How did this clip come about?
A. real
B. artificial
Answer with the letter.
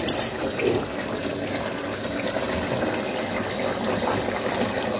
A